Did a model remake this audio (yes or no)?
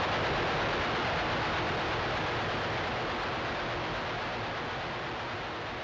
no